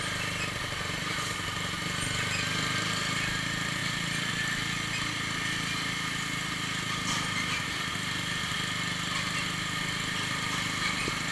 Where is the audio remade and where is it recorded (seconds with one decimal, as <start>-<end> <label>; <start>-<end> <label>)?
0.0-3.8 recorded; 3.8-4.3 remade; 4.3-11.3 recorded